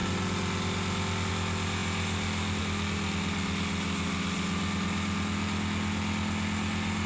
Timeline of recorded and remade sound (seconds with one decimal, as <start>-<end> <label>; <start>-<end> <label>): 0.0-7.1 recorded